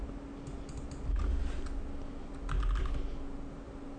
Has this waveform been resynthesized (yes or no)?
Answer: no